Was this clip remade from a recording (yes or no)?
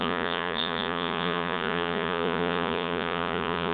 yes